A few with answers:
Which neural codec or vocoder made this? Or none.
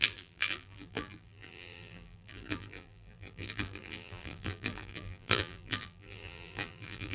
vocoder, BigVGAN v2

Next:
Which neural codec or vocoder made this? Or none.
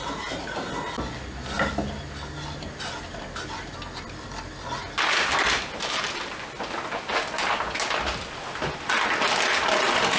none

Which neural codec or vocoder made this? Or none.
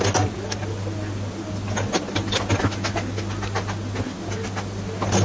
none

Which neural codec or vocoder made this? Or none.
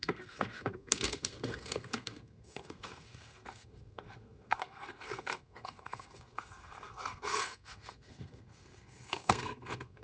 codec, SNAC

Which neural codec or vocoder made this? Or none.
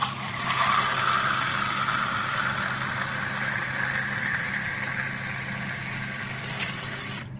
none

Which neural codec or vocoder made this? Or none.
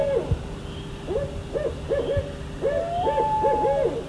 none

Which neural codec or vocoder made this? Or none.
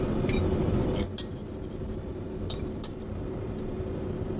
none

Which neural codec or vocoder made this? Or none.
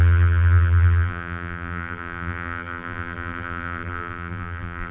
vocoder, BigVGAN v2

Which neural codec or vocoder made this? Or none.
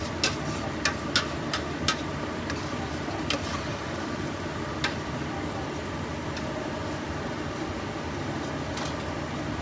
none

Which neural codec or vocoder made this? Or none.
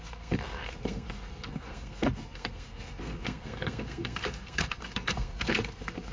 codec, SNAC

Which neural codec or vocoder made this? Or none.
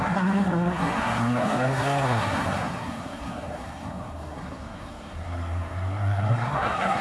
codec, SNAC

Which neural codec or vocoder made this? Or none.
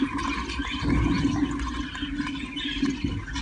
none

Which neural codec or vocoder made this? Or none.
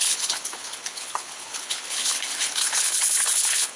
codec, HILCodec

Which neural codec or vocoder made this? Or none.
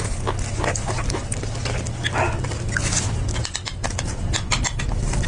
none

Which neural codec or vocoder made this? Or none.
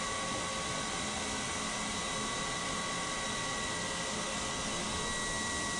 none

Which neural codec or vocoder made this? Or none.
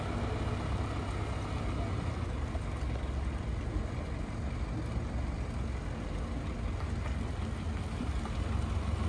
none